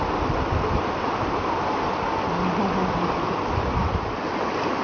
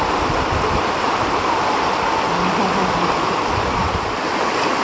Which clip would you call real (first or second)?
first